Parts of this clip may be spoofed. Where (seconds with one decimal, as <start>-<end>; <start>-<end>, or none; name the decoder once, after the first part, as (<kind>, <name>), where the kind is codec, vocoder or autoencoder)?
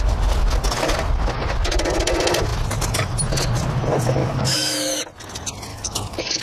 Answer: 4.2-5.0 (codec, DAC); 5.7-6.4